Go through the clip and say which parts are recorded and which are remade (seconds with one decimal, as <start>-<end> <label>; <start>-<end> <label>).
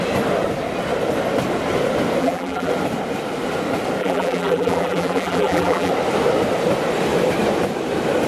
0.0-2.2 recorded; 2.2-2.7 remade; 2.7-4.0 recorded; 4.0-5.9 remade; 5.9-8.3 recorded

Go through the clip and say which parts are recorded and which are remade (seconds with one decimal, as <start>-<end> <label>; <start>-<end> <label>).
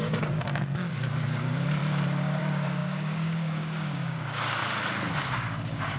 0.0-1.8 remade; 1.8-2.4 recorded; 2.4-4.6 remade; 4.6-5.2 recorded; 5.2-6.0 remade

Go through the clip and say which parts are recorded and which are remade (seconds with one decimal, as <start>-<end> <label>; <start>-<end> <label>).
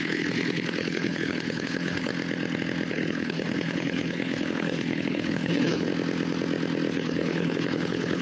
0.0-2.1 remade; 2.1-2.9 recorded; 2.9-5.9 remade; 5.9-6.9 recorded; 6.9-8.2 remade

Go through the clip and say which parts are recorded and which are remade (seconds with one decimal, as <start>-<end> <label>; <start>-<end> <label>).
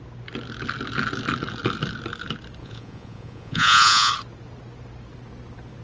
0.0-2.6 recorded; 2.6-4.1 remade; 4.1-5.8 recorded